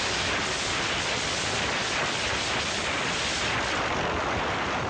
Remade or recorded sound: recorded